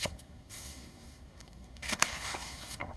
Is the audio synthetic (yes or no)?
yes